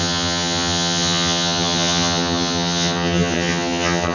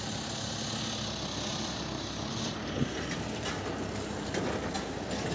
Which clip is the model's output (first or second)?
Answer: first